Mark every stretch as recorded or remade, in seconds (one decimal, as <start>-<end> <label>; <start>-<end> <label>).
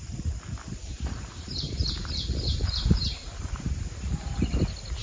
0.0-0.8 recorded; 0.8-2.6 remade; 2.6-3.2 recorded; 3.2-3.7 remade; 3.7-5.0 recorded